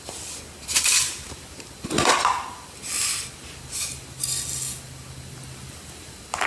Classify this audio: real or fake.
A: real